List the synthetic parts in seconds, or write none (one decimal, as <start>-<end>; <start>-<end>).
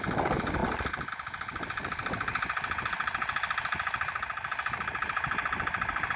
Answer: none